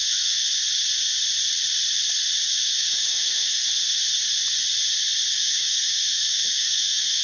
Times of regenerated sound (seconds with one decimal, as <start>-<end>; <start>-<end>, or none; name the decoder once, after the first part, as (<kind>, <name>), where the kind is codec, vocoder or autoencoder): 0.0-0.4 (autoencoder, DAC-VAE); 2.5-3.6; 5.3-7.2